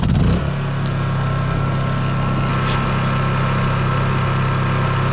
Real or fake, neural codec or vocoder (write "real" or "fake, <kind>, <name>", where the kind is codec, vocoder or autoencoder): real